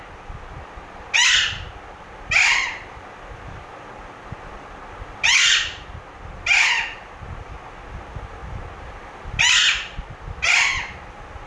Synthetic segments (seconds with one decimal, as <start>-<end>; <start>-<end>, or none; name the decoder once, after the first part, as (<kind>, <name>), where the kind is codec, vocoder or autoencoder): none